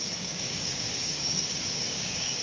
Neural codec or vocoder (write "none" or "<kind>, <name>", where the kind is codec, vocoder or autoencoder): codec, DAC